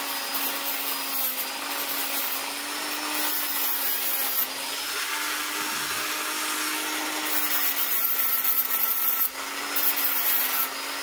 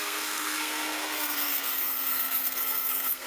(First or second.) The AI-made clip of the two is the second